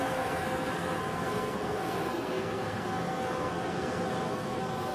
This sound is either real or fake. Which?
fake